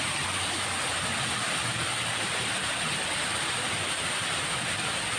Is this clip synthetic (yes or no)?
yes